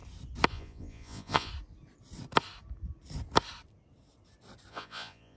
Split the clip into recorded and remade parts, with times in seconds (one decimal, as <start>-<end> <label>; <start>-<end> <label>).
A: 0.0-0.5 recorded; 0.5-1.5 remade; 1.5-4.7 recorded; 4.7-5.4 remade